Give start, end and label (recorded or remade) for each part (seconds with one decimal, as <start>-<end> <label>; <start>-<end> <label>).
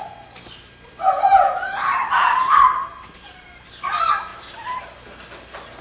0.0-1.3 recorded; 1.3-3.9 remade; 3.9-4.3 recorded; 4.3-4.8 remade; 4.8-5.8 recorded